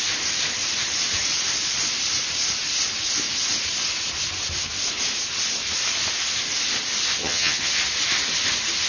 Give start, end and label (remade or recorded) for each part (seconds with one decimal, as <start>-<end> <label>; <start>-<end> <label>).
0.0-7.2 recorded; 7.2-7.7 remade; 7.7-8.9 recorded